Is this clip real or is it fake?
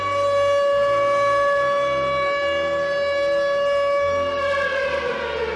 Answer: real